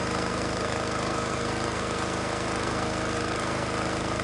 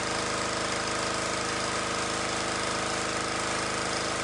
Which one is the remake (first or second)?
first